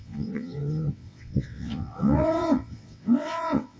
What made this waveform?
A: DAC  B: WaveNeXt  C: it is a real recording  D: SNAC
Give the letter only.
B